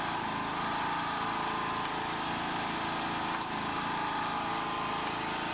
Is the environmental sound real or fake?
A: real